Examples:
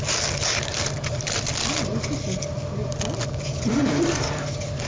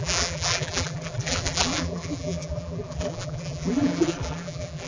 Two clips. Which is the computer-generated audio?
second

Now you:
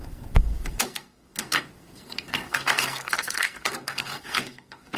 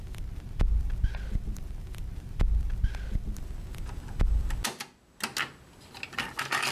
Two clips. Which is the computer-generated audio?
first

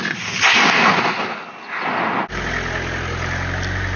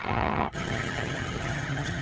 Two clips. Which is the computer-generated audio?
second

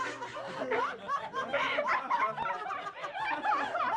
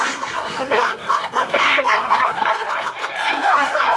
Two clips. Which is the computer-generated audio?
second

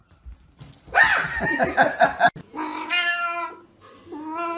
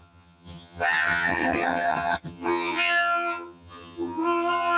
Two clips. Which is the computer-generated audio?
second